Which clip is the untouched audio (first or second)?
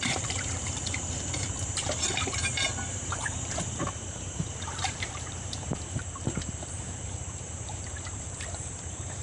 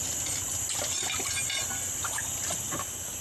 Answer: second